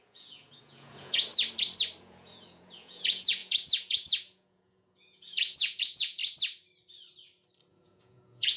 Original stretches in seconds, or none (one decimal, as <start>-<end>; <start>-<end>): 1.3-2.0; 6.2-7.7